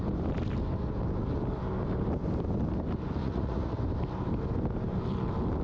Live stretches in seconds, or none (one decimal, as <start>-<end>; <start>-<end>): 0.0-3.2; 3.8-5.6